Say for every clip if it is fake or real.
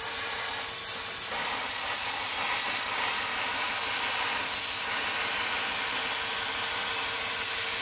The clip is real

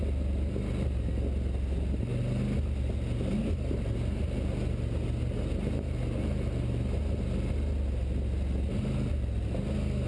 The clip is real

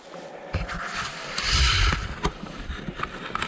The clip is fake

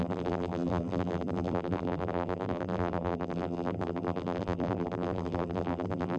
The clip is fake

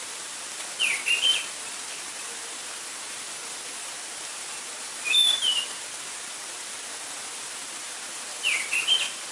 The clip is fake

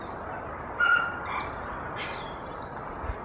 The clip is real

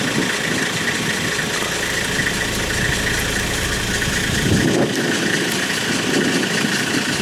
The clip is real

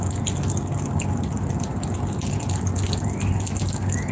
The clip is real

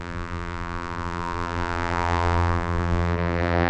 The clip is fake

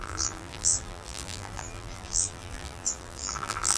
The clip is fake